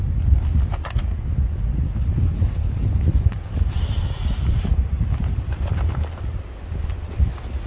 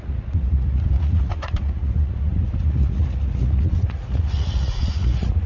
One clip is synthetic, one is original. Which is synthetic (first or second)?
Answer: second